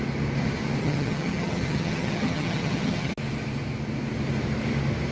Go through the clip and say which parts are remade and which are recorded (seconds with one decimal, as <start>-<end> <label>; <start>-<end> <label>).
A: 0.0-0.8 recorded; 0.8-3.1 remade; 3.1-5.1 recorded

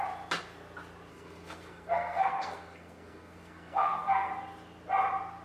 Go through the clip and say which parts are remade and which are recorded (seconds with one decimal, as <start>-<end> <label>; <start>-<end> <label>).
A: 0.0-1.1 recorded; 1.1-4.3 remade; 4.3-5.4 recorded

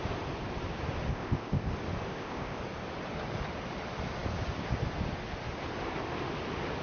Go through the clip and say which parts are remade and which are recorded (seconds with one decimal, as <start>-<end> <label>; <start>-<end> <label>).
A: 0.0-1.1 recorded; 1.1-1.7 remade; 1.7-2.1 recorded; 2.1-2.6 remade; 2.6-6.8 recorded

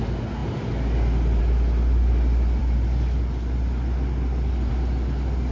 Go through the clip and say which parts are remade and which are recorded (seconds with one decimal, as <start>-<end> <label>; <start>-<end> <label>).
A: 0.0-5.5 recorded

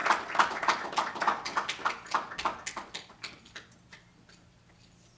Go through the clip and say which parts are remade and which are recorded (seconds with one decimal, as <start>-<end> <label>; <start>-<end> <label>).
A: 0.0-5.2 recorded

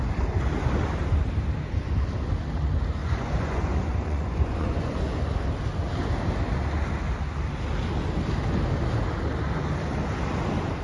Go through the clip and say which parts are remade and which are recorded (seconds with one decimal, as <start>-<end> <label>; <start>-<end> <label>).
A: 0.0-3.0 recorded; 3.0-5.0 remade; 5.0-10.8 recorded

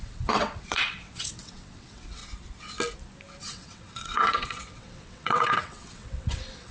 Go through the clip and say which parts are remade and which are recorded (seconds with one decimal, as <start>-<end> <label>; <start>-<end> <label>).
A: 0.0-2.2 remade; 2.2-3.4 recorded; 3.4-6.7 remade